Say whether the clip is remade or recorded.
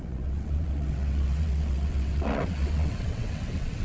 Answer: remade